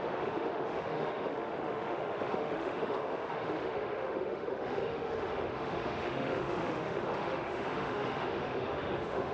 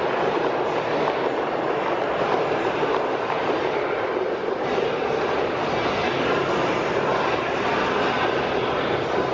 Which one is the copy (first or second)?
first